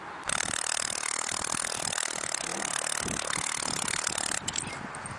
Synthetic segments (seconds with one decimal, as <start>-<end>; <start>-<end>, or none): none